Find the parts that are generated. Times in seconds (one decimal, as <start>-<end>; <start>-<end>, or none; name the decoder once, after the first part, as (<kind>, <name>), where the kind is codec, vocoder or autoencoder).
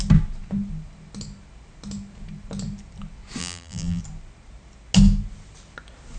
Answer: 3.4-4.0 (vocoder, BigVGAN v2)